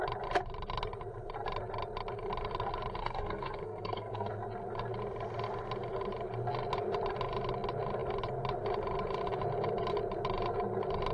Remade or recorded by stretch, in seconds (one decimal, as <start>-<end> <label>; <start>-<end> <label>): 0.0-3.0 recorded; 3.0-4.3 remade; 4.3-11.1 recorded